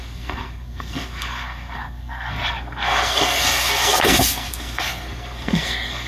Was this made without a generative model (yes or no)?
no